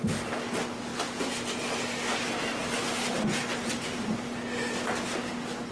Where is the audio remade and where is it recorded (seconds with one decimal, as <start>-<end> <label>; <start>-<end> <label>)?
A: 0.0-2.6 recorded; 2.6-5.3 remade; 5.3-5.7 recorded